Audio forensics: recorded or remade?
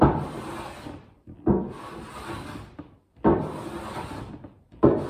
recorded